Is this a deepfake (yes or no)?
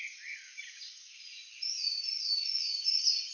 yes